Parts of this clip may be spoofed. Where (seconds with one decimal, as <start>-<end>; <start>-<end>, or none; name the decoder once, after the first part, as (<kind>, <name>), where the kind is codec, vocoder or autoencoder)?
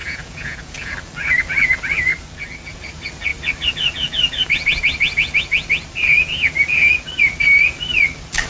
0.0-0.9 (vocoder, Vocos)